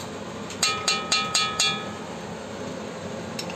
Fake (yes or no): no